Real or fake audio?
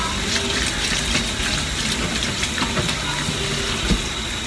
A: real